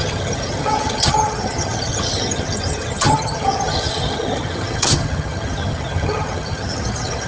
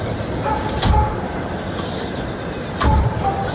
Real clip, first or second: second